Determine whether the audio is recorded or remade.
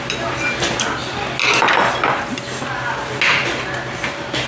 recorded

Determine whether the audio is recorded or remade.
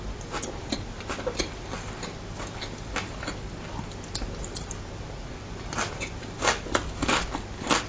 recorded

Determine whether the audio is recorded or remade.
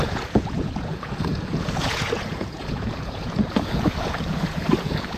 remade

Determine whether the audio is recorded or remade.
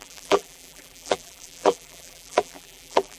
remade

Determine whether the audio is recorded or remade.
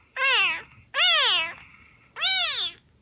recorded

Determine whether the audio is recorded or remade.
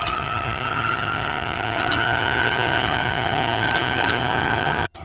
remade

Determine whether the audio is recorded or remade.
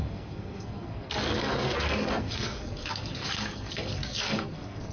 remade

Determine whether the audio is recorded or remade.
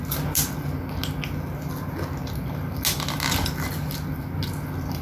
recorded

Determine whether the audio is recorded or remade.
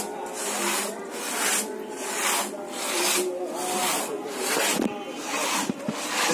recorded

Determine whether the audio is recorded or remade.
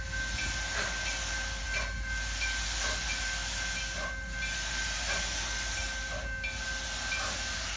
recorded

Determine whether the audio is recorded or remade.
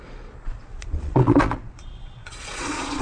remade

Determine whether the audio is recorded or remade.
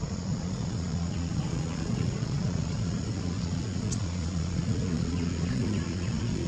remade